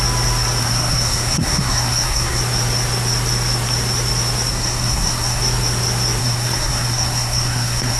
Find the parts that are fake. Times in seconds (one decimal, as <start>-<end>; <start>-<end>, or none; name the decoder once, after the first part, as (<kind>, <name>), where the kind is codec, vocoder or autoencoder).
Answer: 0.6-2.4 (codec, SNAC); 4.5-5.4; 6.2-8.0